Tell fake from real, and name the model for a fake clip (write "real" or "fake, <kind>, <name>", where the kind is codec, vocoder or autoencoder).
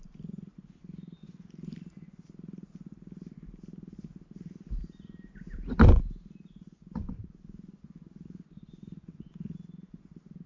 real